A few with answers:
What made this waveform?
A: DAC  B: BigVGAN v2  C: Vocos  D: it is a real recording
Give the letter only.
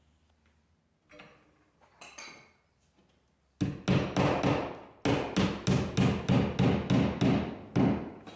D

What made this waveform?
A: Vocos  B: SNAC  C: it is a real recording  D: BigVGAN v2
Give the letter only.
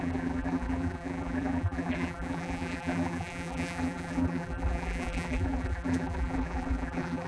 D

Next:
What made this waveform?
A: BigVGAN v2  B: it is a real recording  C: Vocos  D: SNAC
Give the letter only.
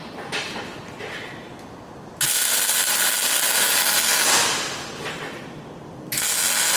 A